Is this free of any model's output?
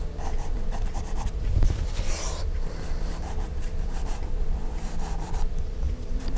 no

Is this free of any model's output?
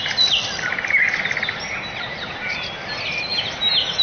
yes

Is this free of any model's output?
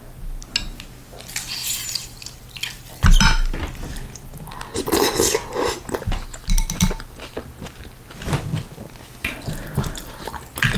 yes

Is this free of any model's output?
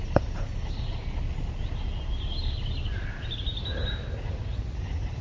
yes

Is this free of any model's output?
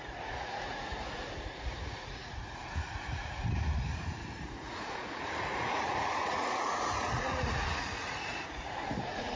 no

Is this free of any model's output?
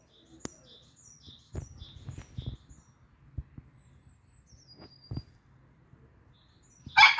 yes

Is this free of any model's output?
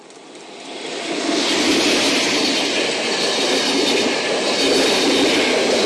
yes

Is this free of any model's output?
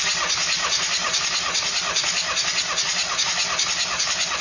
yes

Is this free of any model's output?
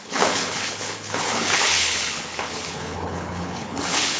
no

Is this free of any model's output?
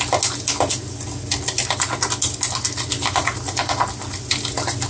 yes